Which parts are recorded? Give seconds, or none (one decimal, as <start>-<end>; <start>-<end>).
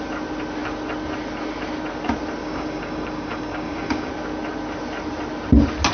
0.0-2.4; 4.1-5.9